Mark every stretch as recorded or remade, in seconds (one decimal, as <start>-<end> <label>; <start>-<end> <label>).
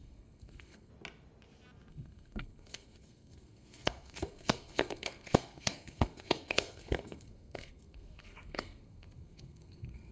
0.0-0.9 remade; 0.9-1.9 recorded; 1.9-10.1 remade